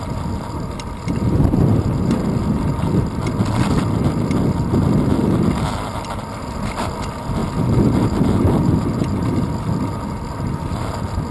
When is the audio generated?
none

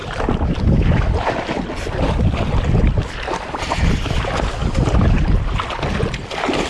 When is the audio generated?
none

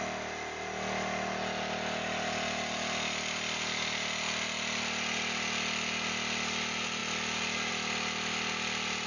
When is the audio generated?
none

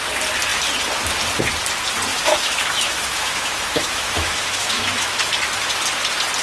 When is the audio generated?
2.1-5.3 (autoencoder, DAC-VAE)

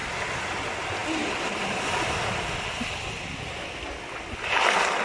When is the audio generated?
none

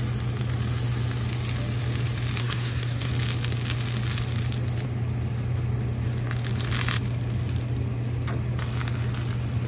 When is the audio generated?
2.4-3.1 (codec, SNAC)

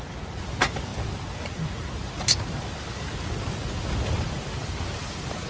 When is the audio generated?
4.6-5.5 (vocoder, BigVGAN v2)

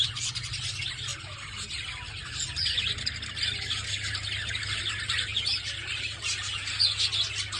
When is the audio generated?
none